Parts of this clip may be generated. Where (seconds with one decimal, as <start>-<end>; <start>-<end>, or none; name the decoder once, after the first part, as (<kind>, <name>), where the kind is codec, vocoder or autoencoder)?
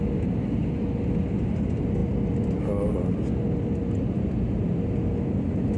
none